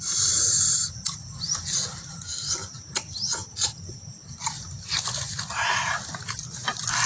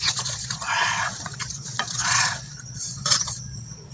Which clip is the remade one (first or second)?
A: second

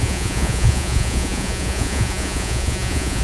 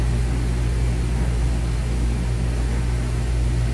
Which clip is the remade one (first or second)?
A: first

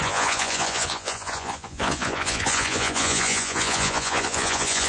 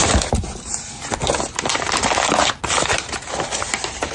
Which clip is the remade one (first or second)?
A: first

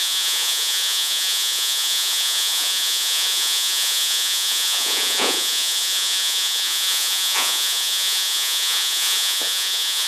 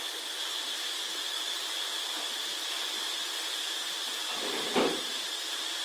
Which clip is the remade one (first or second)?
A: first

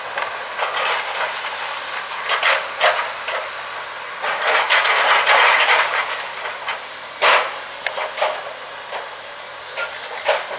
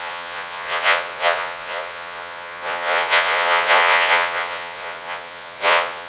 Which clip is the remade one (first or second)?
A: second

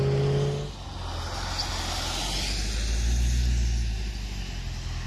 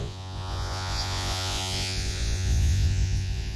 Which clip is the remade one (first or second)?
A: second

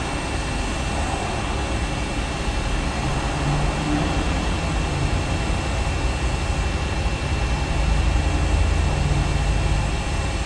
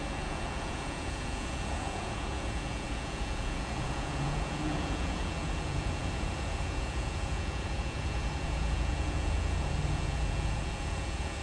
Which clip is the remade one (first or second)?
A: second